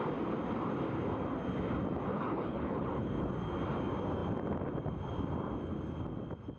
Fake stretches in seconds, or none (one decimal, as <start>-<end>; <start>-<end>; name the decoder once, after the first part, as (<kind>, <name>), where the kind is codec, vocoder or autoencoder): 2.1-3.1 (codec, HILCodec)